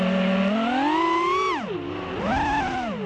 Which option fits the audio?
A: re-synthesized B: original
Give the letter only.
B